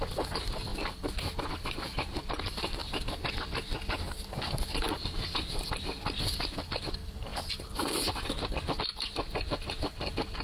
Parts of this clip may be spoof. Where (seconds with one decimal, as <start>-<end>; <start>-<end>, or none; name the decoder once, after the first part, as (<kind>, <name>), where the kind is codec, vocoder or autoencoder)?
0.0-0.7 (vocoder, BigVGAN v2); 1.5-2.8; 5.5-7.3; 9.7-10.4